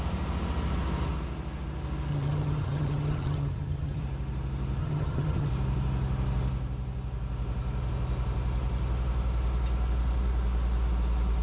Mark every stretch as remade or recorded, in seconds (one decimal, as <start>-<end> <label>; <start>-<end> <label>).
0.0-2.1 recorded; 2.1-4.0 remade; 4.0-4.8 recorded; 4.8-5.5 remade; 5.5-11.4 recorded